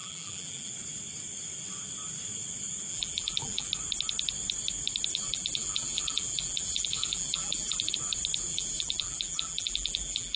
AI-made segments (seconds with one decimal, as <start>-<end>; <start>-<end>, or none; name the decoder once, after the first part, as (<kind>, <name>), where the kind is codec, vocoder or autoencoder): 0.0-0.7 (vocoder, BigVGAN v2); 2.9-3.7; 5.1-7.9; 8.5-10.4